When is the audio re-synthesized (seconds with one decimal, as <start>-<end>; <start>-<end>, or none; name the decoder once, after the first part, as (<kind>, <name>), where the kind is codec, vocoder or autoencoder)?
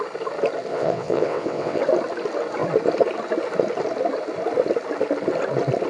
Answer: 0.7-1.8 (vocoder, WaveNeXt)